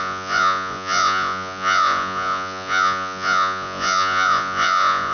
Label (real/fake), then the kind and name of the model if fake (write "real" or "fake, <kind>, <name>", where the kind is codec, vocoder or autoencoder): fake, vocoder, Vocos